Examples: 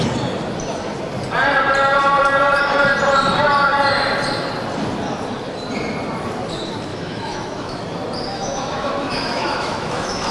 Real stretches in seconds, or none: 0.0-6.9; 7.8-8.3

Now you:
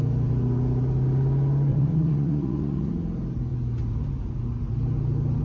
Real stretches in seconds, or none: 0.0-1.7; 2.9-5.4

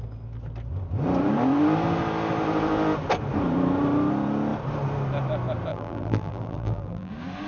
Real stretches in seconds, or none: 0.0-5.7; 7.1-7.5

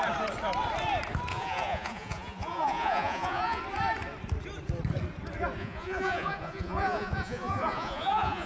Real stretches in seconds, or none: 0.0-1.3; 3.6-5.6

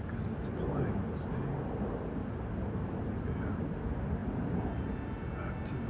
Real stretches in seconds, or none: 0.0-5.9

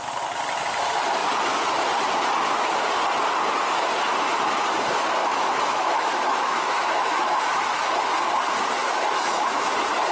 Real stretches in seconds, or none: 0.0-5.2; 7.9-8.8; 9.7-10.1